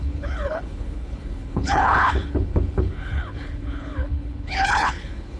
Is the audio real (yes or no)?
no